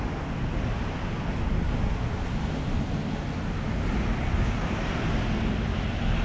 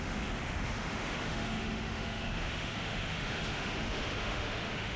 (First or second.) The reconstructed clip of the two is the second